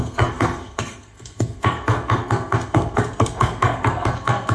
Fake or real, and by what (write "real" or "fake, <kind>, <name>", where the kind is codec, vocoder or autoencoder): fake, codec, SNAC